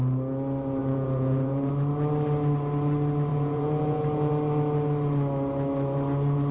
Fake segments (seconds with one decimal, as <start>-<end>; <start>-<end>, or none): 0.8-1.7; 3.3-4.3